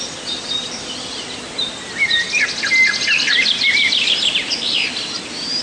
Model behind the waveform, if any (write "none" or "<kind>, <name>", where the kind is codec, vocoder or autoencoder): none